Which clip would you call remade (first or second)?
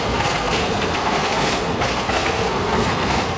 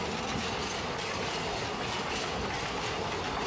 first